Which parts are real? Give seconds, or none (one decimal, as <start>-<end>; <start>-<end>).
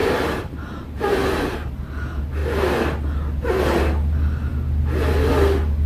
1.7-5.9